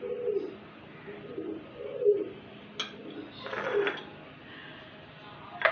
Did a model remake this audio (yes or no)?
no